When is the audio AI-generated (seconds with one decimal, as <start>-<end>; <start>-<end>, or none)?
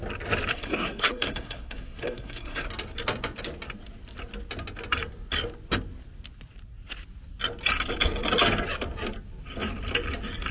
0.5-2.7